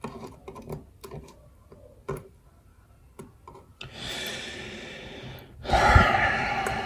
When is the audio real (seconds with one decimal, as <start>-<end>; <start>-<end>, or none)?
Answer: 0.0-6.9